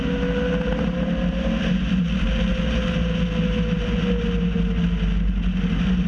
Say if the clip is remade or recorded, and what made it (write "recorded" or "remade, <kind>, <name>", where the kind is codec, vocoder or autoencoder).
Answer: recorded